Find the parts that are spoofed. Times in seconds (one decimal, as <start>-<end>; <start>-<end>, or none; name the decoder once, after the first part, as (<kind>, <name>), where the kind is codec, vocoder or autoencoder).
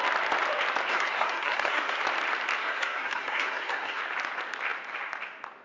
0.9-2.0 (codec, SNAC); 2.6-4.0